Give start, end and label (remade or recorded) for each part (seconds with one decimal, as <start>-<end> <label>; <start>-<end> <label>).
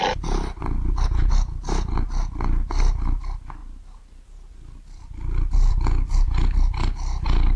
0.0-3.6 recorded; 3.6-7.6 remade